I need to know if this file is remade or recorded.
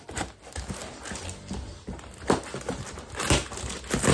recorded